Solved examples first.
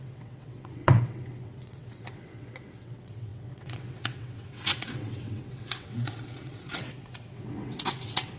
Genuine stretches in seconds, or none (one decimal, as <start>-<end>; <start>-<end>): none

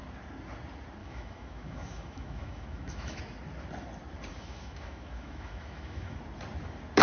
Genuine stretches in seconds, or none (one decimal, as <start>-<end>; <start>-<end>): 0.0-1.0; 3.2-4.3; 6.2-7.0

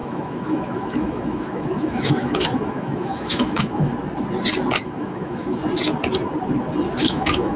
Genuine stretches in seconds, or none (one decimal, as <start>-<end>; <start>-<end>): 3.9-4.8; 5.6-7.0

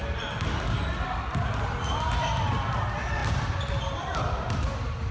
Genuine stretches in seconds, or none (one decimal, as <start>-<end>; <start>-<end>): 1.6-3.2; 4.3-5.1